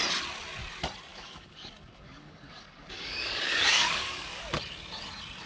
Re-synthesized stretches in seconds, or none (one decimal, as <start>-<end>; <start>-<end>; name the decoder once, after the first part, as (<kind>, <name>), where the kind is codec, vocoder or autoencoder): 1.1-4.4 (codec, DAC)